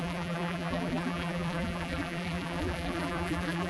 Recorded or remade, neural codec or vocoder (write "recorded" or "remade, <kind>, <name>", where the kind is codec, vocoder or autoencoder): remade, vocoder, BigVGAN v2